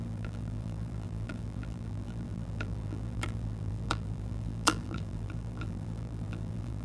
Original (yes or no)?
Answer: no